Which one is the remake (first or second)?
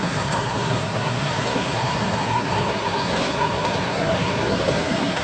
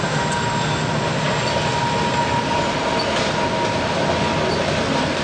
first